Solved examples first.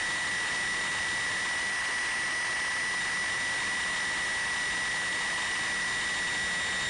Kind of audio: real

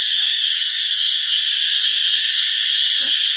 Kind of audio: fake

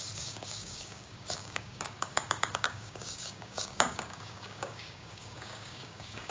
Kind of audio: fake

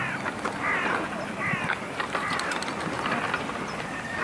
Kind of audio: real